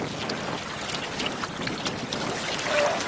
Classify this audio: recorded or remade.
recorded